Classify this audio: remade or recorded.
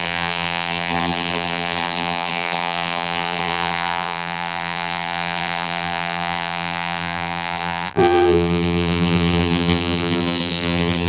remade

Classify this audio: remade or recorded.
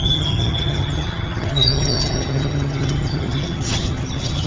remade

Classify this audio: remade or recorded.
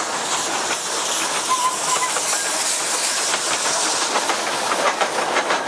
remade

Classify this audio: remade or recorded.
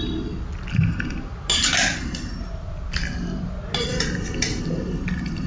recorded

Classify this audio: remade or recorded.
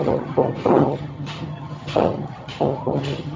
remade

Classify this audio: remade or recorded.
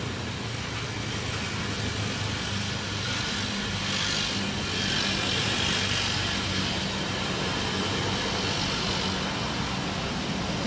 recorded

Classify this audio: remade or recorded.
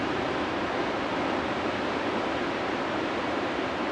remade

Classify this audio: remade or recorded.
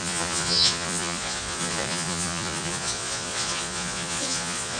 remade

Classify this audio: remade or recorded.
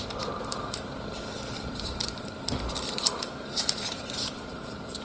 remade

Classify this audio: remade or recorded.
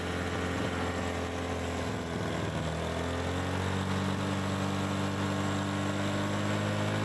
recorded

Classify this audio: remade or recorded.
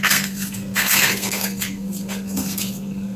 remade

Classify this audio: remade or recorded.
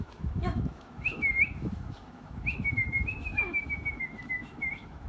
remade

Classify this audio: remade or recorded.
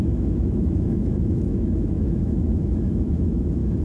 remade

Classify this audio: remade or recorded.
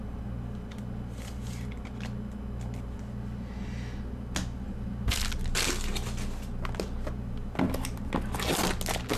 recorded